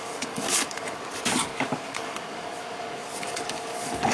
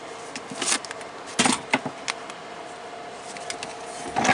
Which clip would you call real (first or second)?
second